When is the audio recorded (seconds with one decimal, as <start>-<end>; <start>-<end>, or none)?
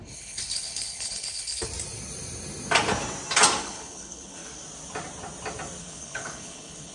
1.7-3.6; 4.4-5.8